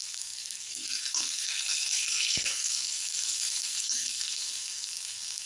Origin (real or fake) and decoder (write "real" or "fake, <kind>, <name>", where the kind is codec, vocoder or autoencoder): fake, codec, SNAC